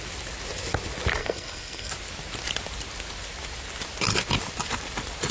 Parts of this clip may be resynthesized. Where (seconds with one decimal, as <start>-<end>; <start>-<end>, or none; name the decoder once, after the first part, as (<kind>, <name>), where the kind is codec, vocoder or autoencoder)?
1.2-1.9 (codec, SNAC)